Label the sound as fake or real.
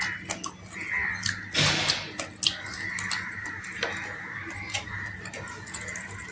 real